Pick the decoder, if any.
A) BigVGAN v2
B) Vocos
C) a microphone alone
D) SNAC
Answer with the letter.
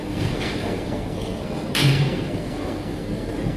D